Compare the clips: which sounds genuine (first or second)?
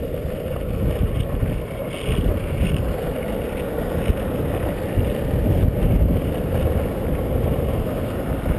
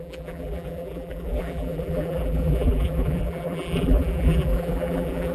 first